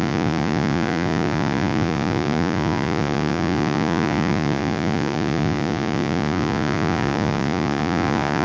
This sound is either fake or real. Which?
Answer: fake